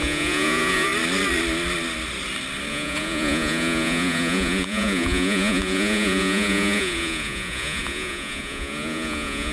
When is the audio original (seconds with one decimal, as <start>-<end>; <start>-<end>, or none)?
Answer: 0.9-2.7

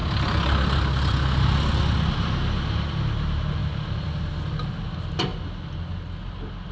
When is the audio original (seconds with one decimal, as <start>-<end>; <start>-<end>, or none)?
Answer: 0.0-6.7

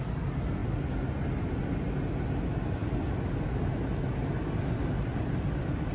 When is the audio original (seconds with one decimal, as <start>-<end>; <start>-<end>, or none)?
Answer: 0.0-5.9